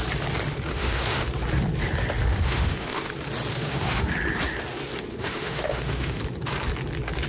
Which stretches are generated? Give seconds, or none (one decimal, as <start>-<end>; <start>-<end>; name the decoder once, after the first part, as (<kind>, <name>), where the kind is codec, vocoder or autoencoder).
0.7-1.2 (autoencoder, DAC-VAE); 2.3-3.1; 3.5-4.0; 5.1-6.2